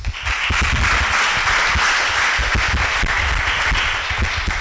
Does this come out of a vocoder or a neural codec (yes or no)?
no